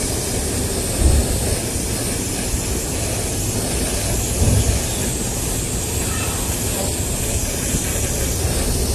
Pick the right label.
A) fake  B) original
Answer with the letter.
B